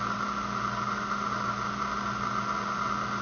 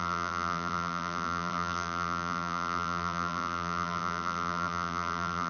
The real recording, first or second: first